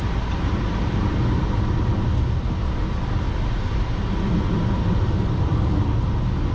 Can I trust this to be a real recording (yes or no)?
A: yes